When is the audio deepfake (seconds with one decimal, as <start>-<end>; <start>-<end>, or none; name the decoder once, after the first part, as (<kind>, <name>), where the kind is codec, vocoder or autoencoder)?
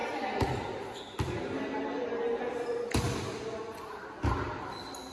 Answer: none